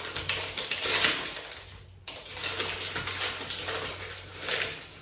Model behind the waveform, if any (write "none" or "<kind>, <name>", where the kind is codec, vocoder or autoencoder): none